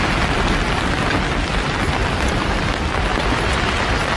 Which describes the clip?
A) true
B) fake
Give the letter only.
A